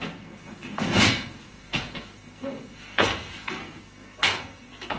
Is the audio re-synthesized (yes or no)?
yes